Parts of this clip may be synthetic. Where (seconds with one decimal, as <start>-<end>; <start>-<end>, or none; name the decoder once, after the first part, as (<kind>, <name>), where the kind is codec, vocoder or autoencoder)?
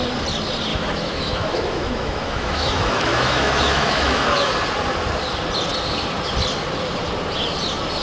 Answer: 0.7-4.5 (autoencoder, DAC-VAE)